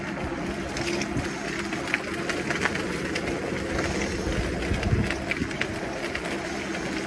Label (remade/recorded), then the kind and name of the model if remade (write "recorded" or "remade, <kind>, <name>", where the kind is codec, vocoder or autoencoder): recorded